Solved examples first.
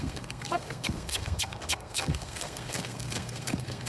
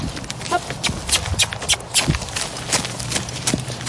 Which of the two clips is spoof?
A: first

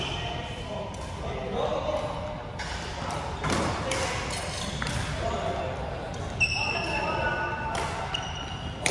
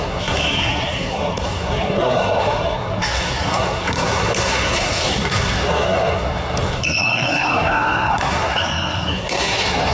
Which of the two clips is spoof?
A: second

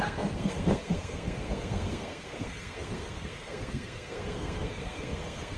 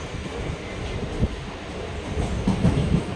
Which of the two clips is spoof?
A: first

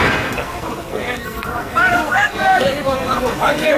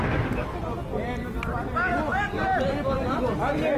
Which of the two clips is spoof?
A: first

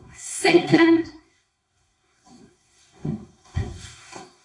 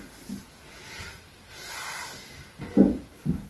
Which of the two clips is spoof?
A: first